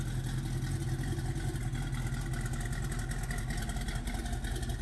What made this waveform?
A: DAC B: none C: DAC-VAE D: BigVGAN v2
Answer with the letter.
B